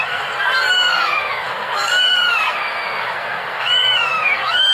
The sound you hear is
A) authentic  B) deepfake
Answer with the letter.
B